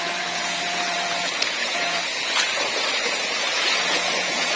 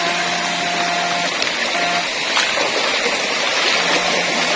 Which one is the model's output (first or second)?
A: first